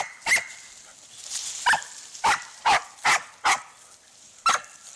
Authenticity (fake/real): real